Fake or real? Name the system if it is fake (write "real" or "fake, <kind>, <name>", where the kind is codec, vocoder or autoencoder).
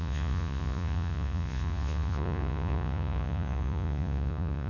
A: fake, vocoder, Vocos